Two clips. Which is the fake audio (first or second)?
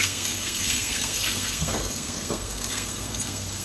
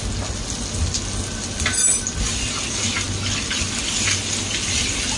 first